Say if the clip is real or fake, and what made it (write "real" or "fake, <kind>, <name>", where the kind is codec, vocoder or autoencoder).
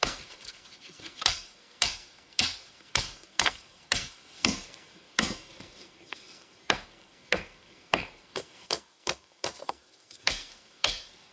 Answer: fake, codec, SNAC